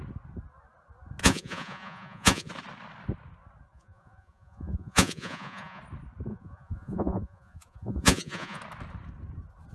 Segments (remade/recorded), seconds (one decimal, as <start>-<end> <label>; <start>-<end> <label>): 0.0-1.2 recorded; 1.2-2.5 remade; 2.5-3.7 recorded; 3.7-5.8 remade; 5.8-6.3 recorded; 6.3-8.6 remade; 8.6-9.7 recorded